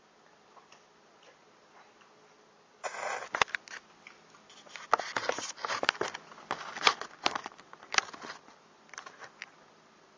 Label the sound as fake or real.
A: real